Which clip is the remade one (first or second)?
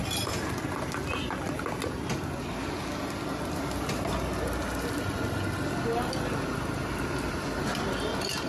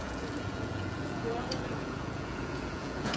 second